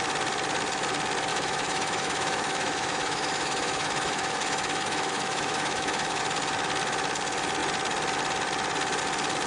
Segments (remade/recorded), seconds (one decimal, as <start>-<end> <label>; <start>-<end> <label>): 0.0-1.3 recorded; 1.3-6.2 remade; 6.2-9.5 recorded